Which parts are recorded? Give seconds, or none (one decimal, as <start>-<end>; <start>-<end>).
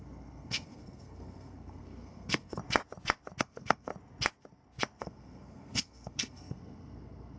2.6-3.4; 3.9-5.0